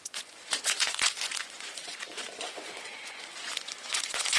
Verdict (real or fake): fake